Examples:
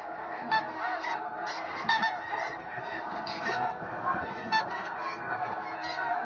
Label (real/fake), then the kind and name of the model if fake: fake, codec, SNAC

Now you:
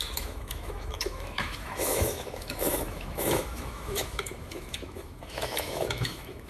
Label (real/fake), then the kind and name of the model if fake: fake, autoencoder, DAC-VAE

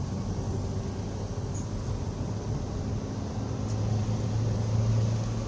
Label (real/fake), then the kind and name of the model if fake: real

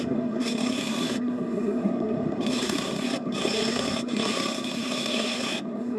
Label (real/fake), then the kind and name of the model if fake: fake, codec, SNAC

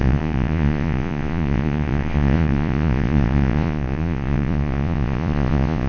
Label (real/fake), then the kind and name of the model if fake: fake, vocoder, Vocos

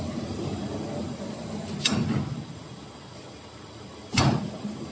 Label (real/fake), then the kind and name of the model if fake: real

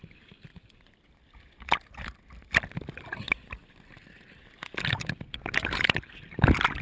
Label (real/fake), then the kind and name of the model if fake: real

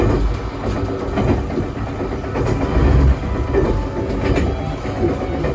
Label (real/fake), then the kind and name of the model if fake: real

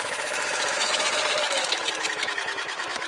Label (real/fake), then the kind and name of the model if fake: fake, autoencoder, DAC-VAE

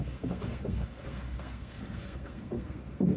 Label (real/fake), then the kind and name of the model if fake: fake, codec, SNAC